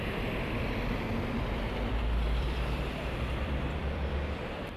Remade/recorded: remade